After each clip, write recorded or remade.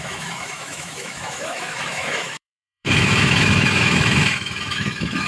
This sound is remade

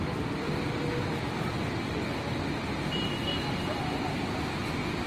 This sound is recorded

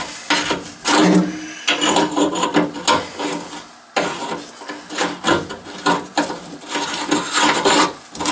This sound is recorded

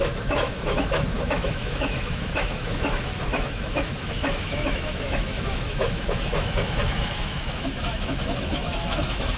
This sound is remade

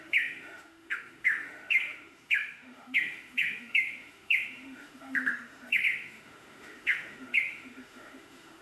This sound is remade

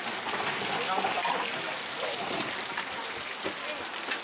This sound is recorded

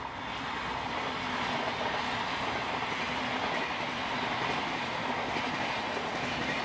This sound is recorded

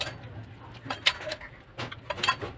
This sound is recorded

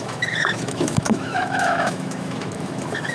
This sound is remade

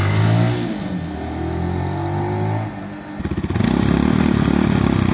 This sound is recorded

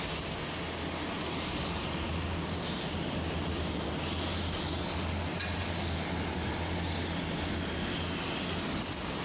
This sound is recorded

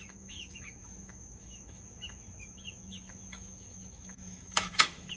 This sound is remade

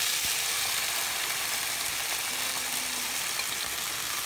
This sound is recorded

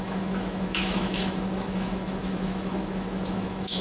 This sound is remade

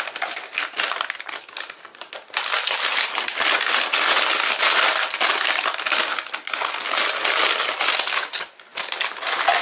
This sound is recorded